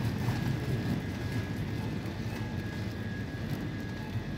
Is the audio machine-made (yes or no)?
no